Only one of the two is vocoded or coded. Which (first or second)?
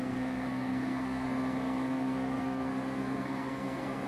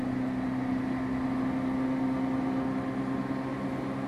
first